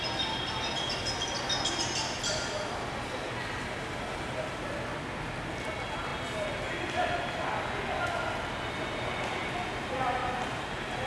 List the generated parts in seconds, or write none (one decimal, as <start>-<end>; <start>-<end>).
10.2-10.7

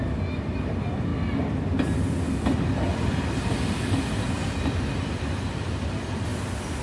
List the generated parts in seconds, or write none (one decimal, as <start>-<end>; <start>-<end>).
none

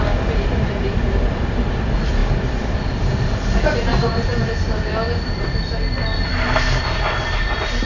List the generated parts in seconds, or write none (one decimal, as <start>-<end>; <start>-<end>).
none

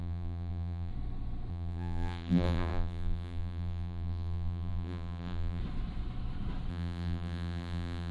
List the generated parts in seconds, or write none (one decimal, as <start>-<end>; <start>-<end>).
0.0-0.9; 1.5-5.6; 6.7-8.1

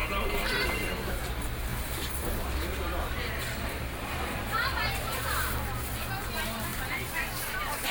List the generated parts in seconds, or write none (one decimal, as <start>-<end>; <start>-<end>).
0.0-0.9; 1.7-5.3; 6.7-7.9

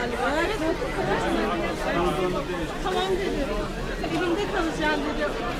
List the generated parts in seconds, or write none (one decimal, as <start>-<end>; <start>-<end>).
none